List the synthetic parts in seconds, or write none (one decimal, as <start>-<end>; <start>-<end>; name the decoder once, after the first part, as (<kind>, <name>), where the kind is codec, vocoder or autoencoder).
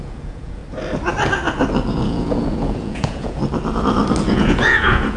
0.0-0.6 (vocoder, Vocos); 1.9-3.4; 4.2-5.2